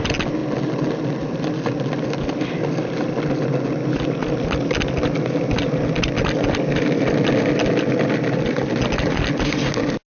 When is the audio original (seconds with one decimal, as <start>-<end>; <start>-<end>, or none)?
0.0-10.1